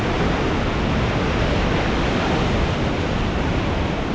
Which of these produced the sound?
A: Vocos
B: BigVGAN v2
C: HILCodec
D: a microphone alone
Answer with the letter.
D